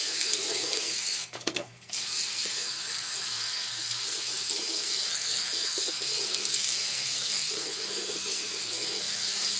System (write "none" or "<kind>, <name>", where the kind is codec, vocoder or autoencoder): codec, SNAC